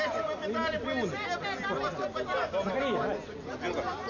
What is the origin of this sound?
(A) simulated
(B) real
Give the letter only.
B